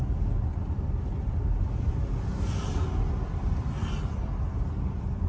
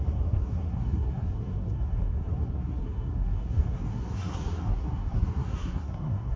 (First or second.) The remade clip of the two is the second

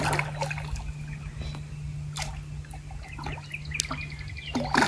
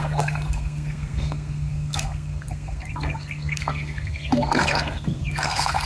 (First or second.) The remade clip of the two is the second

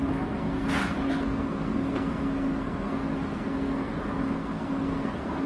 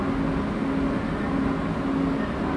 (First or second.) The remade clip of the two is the first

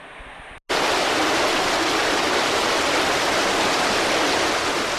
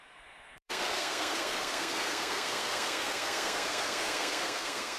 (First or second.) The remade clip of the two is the second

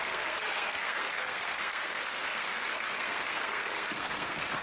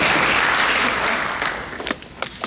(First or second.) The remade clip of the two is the first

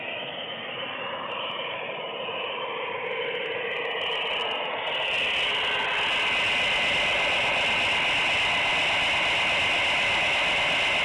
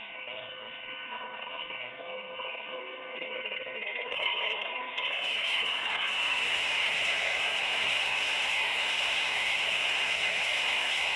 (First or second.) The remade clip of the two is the second